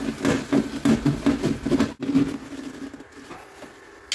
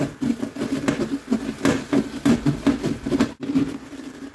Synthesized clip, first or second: second